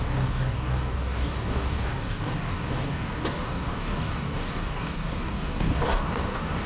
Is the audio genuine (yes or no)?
no